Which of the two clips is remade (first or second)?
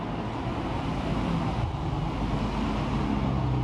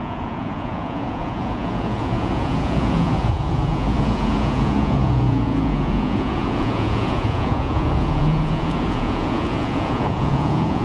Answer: second